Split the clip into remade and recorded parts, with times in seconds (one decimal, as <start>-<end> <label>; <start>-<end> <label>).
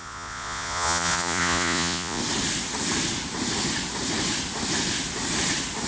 0.0-2.2 remade; 2.2-5.9 recorded